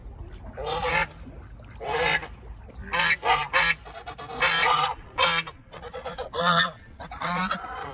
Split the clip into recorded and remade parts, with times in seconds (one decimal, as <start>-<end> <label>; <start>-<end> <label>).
0.0-4.6 recorded; 4.6-7.9 remade